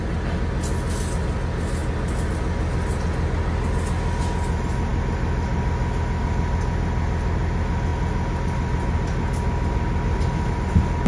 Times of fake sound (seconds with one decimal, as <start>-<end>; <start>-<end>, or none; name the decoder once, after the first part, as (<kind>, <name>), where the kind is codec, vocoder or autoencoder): none